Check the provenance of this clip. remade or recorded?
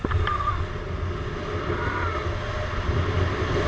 recorded